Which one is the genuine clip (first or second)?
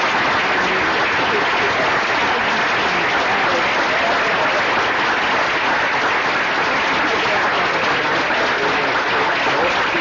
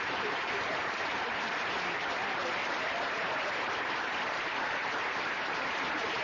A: first